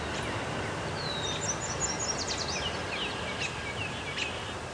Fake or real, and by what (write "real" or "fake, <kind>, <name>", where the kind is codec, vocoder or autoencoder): real